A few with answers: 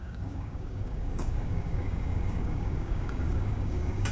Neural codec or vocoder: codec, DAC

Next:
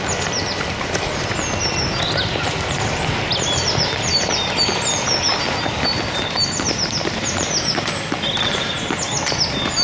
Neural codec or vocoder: none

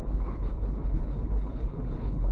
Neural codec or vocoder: codec, HILCodec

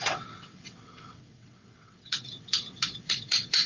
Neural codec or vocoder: vocoder, WaveNeXt